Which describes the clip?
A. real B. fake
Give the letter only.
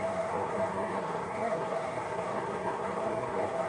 B